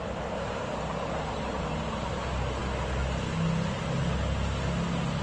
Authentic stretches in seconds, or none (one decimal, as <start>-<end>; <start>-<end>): 0.0-5.2